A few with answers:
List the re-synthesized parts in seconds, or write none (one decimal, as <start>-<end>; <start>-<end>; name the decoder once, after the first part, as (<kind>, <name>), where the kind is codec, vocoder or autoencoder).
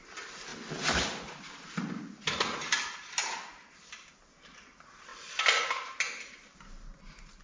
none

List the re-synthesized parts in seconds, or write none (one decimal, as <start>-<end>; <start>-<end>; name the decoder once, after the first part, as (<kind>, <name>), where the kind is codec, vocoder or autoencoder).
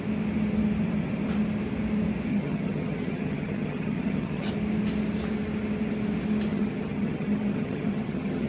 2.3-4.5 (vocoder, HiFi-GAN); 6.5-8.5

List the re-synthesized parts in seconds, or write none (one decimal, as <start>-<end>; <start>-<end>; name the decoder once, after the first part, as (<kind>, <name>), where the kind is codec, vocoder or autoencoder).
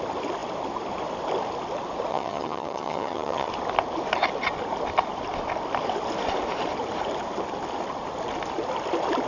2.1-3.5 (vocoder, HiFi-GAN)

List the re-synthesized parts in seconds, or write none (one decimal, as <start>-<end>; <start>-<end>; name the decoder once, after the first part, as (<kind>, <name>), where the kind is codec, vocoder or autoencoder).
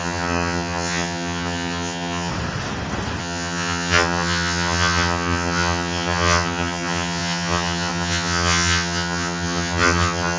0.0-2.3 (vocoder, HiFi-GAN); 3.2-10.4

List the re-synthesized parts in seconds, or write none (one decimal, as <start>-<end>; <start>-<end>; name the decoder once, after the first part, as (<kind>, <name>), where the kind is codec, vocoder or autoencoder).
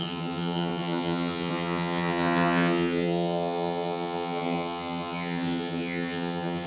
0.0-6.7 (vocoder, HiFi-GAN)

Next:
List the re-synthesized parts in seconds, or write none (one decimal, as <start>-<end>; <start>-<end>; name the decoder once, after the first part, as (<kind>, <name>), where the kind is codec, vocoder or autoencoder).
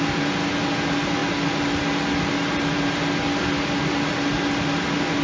none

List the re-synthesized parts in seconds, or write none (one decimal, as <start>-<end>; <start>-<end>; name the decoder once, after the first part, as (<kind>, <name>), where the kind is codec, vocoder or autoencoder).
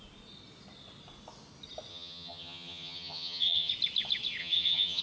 1.9-3.7 (vocoder, HiFi-GAN); 4.4-5.0